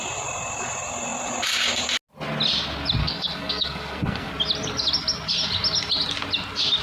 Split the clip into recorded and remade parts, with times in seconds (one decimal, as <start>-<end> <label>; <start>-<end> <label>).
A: 0.0-3.0 recorded; 3.0-4.3 remade; 4.3-6.8 recorded